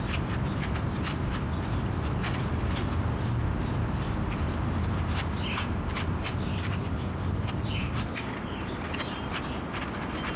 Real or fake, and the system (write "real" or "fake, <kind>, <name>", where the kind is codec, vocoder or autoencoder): fake, vocoder, BigVGAN v2